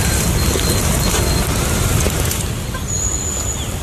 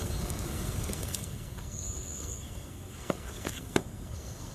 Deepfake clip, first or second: second